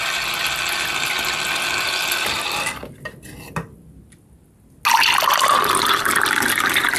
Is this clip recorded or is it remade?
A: recorded